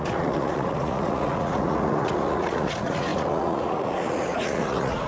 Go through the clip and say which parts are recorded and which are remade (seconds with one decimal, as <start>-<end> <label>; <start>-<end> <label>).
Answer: 0.0-5.1 remade